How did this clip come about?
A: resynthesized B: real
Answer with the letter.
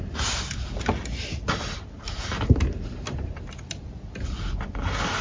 B